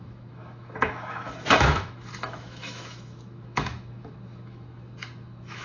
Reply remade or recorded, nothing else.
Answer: remade